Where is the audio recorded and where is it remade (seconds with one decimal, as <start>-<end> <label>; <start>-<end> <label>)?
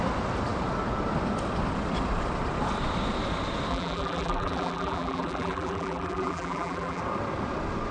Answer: 0.0-3.7 recorded; 3.7-7.0 remade; 7.0-7.9 recorded